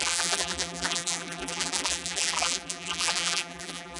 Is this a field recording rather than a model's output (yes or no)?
no